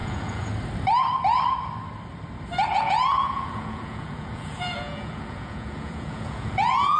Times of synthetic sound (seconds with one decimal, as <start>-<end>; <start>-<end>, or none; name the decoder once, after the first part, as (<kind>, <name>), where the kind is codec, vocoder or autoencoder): 0.0-0.5 (vocoder, Vocos); 2.7-7.0